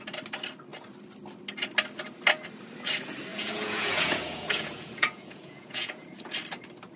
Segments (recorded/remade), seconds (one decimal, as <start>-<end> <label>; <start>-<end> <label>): 0.0-3.3 recorded; 3.3-6.3 remade; 6.3-7.0 recorded